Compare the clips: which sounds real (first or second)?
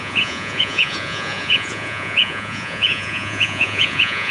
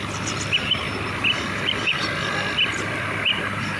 second